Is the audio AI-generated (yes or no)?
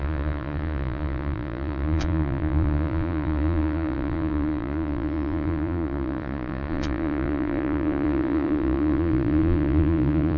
yes